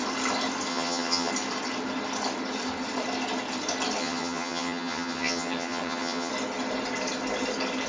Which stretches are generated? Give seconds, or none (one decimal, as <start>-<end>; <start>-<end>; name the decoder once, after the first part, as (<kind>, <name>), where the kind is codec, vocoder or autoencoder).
0.7-1.3 (vocoder, HiFi-GAN); 4.0-6.3